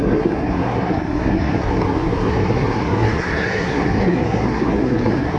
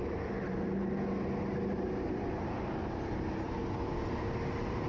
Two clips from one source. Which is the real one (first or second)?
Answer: second